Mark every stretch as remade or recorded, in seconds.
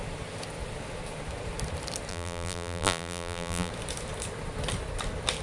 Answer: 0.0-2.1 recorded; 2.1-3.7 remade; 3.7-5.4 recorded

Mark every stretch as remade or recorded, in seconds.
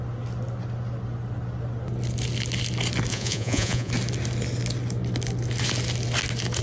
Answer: 0.0-3.1 recorded; 3.1-3.9 remade; 3.9-6.6 recorded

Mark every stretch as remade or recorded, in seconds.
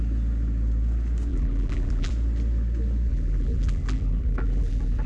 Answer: 0.0-1.3 recorded; 1.3-2.1 remade; 2.1-3.1 recorded; 3.1-5.1 remade